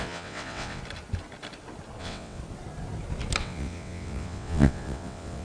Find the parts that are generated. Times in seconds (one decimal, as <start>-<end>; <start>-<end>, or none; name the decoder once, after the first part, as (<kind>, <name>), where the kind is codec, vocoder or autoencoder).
0.0-0.8 (vocoder, WaveNeXt); 2.0-2.4; 3.4-5.4